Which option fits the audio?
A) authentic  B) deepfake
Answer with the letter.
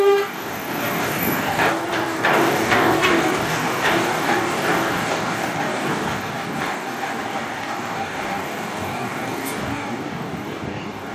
B